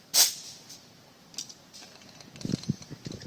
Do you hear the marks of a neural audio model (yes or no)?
no